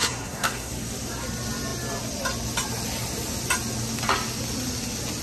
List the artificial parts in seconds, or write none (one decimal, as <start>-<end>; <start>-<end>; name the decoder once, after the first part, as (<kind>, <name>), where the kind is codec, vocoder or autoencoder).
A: 0.0-0.7 (codec, SNAC)